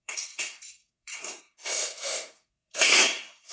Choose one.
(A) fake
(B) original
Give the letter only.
A